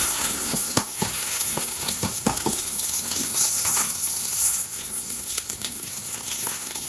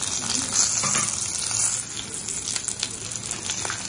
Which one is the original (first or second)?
second